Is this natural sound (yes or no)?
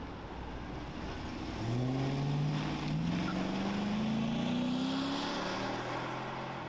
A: yes